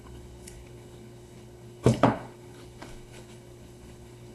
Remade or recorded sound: remade